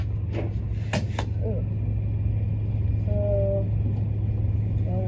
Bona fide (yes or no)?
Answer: yes